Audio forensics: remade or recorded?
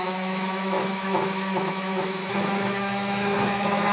remade